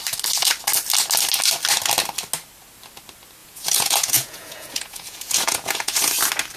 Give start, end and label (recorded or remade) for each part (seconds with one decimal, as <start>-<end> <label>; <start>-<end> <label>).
0.0-3.4 recorded; 3.4-6.1 remade; 6.1-6.6 recorded